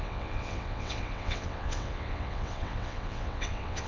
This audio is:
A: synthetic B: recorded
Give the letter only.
A